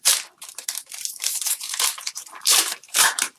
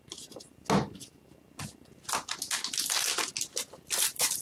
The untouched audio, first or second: second